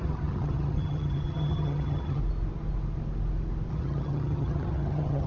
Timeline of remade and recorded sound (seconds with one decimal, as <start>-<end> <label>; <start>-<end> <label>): 0.0-2.2 remade; 2.2-3.7 recorded; 3.7-5.3 remade